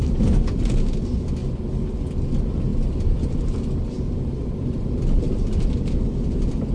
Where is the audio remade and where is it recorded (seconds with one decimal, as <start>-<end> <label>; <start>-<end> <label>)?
0.0-6.7 recorded

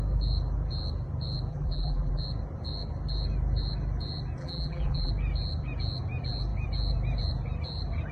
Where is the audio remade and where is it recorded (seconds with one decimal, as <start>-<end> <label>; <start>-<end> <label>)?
0.0-1.5 recorded; 1.5-2.2 remade; 2.2-4.4 recorded; 4.4-5.1 remade; 5.1-8.1 recorded